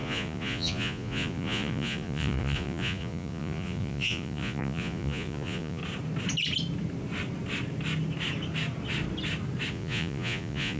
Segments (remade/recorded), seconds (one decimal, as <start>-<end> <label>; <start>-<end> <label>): 0.0-5.8 remade; 5.8-9.7 recorded; 9.7-10.8 remade